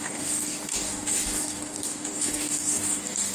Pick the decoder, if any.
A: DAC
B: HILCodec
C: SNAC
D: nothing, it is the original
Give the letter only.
A